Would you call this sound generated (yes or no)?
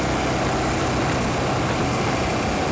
no